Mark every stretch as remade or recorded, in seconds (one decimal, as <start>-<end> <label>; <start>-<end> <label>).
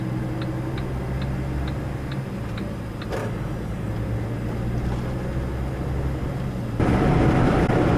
0.0-3.2 recorded; 3.2-3.9 remade; 3.9-8.0 recorded